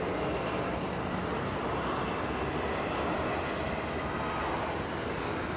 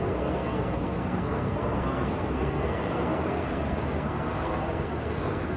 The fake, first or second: second